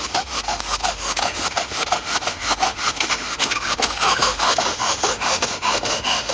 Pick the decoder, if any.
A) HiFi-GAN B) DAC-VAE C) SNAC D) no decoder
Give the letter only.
B